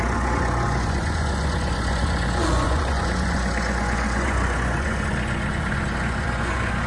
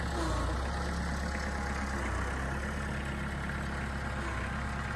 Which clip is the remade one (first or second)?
first